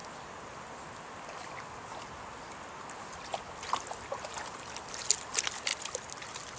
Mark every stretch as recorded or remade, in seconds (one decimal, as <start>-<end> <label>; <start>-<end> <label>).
0.0-6.6 recorded